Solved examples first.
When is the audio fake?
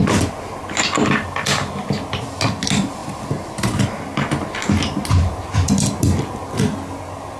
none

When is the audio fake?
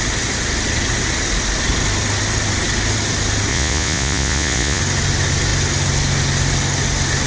3.5-4.8 (vocoder, Vocos)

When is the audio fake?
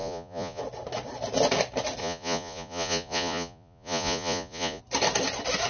0.0-0.6 (vocoder, Vocos); 2.0-4.8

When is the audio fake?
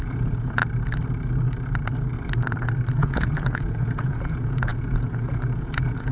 0.0-0.6 (vocoder, Vocos); 3.0-6.1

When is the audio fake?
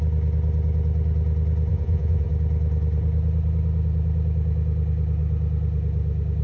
1.7-2.3 (vocoder, Vocos)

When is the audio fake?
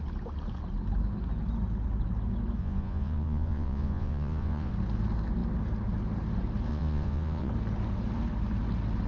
2.6-4.7 (vocoder, Vocos); 6.7-7.5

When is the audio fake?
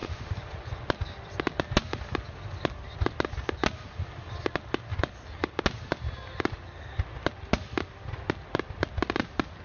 none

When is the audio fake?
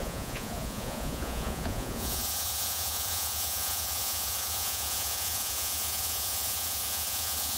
0.0-7.6 (vocoder, Vocos)